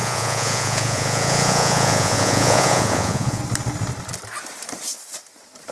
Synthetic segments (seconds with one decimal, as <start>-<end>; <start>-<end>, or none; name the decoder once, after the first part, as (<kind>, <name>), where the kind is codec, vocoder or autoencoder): 0.0-3.4 (vocoder, Vocos)